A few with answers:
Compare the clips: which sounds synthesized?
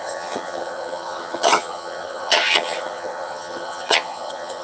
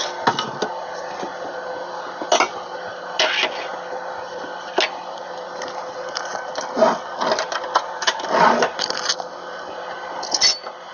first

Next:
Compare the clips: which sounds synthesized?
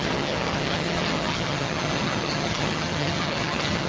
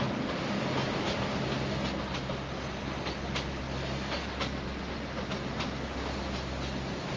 first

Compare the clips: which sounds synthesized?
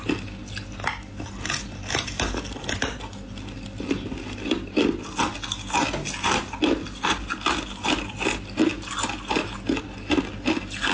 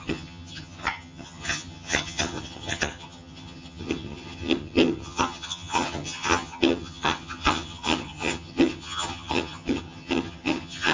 second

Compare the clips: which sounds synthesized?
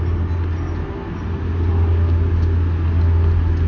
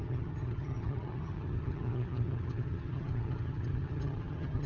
second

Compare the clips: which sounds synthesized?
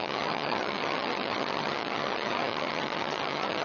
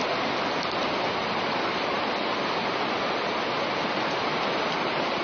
first